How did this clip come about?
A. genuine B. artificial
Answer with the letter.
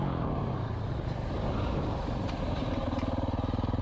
A